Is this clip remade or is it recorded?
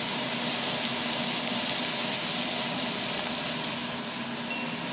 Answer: recorded